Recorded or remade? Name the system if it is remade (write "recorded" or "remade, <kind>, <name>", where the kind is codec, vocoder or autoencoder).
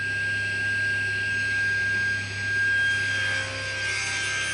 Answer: recorded